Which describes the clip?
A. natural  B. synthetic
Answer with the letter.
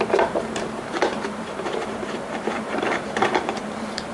B